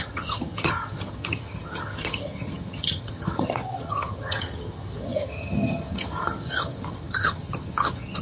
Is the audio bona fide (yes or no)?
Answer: no